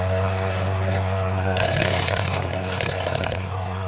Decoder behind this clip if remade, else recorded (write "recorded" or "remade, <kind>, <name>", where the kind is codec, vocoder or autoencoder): remade, codec, SNAC